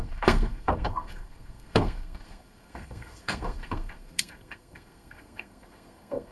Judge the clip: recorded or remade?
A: remade